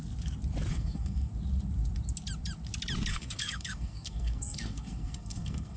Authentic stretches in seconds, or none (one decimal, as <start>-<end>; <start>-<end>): 0.0-0.7; 1.3-3.1